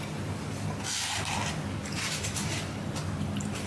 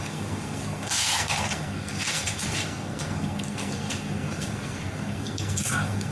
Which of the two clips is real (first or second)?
first